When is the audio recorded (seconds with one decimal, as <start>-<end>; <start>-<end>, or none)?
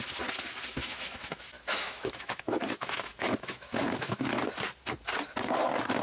0.0-0.8; 4.3-6.0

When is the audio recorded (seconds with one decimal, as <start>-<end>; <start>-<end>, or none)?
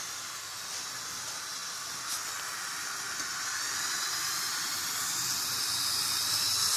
0.0-6.8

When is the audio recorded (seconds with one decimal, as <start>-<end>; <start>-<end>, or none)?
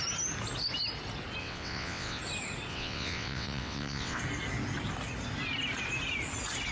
0.0-1.4; 2.2-2.7; 4.2-6.7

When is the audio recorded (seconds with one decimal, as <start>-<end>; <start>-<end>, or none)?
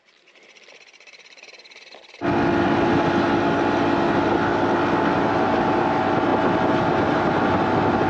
0.0-8.1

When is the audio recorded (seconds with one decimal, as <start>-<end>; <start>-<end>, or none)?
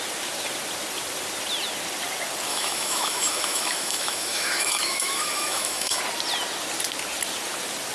0.0-2.5; 6.0-7.9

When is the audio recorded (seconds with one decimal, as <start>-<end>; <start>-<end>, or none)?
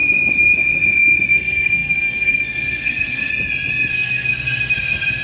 0.0-1.3; 3.3-3.9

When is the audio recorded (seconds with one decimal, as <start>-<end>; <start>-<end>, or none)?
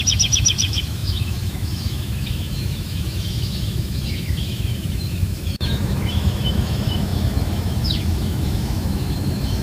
none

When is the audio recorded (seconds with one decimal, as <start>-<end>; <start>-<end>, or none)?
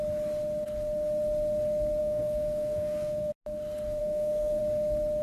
0.0-2.0; 3.3-4.0; 4.6-5.2